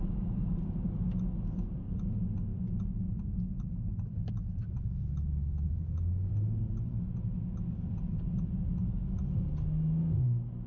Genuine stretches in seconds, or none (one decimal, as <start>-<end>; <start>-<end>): 0.0-5.4; 6.3-10.7